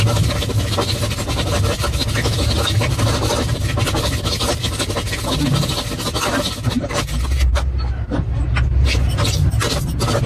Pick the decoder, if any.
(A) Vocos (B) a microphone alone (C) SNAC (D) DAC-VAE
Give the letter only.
B